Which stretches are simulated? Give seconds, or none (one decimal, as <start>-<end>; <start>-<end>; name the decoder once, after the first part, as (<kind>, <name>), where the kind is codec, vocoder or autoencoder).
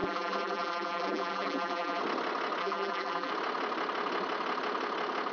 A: 0.0-2.0 (vocoder, BigVGAN v2); 2.6-3.3